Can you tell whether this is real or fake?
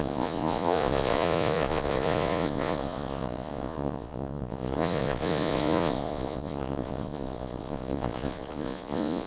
fake